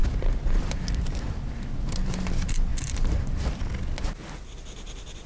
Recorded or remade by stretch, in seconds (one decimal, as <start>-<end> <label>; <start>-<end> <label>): 0.0-5.3 recorded